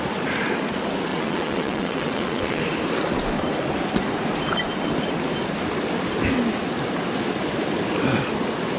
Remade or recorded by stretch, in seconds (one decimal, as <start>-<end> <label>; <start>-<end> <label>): 0.0-1.1 recorded; 1.1-2.6 remade; 2.6-8.8 recorded